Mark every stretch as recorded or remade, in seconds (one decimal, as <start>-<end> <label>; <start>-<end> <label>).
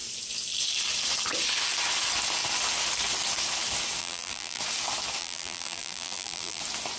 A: 0.0-4.0 recorded; 4.0-4.6 remade; 4.6-5.2 recorded; 5.2-6.6 remade; 6.6-7.0 recorded